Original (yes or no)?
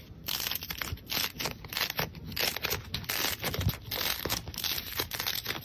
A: yes